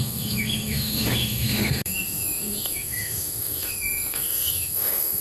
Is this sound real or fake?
fake